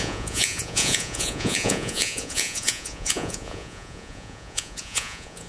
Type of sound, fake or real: fake